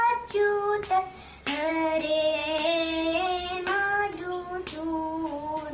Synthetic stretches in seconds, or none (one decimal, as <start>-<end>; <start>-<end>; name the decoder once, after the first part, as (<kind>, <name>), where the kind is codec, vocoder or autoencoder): 0.8-1.7 (codec, DAC); 2.4-4.0